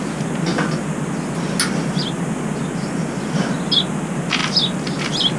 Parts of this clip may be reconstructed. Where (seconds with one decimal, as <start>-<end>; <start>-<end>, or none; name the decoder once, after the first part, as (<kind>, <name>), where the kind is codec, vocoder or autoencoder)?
none